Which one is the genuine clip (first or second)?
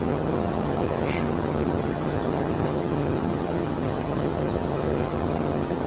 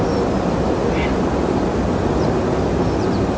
second